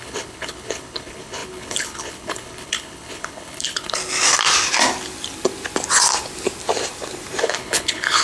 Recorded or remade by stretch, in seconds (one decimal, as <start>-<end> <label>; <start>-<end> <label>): 0.0-4.0 remade; 4.0-7.4 recorded; 7.4-8.2 remade